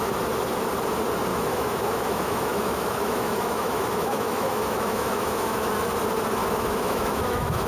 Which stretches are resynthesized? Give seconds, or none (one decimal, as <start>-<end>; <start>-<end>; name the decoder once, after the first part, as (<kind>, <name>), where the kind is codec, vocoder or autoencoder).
1.3-5.7 (autoencoder, DAC-VAE); 6.4-7.7